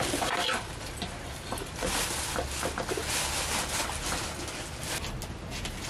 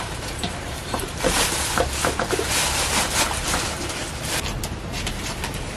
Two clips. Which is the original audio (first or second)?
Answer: first